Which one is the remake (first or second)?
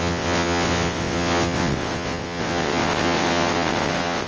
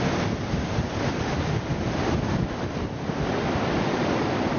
first